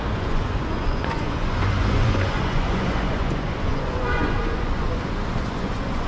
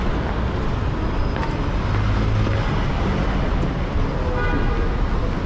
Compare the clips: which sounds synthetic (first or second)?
first